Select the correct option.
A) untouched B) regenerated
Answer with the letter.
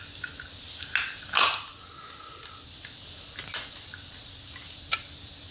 A